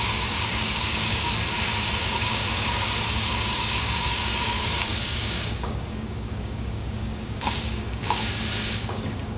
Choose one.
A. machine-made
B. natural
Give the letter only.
A